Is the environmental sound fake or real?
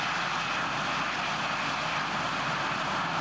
real